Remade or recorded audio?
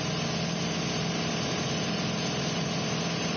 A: recorded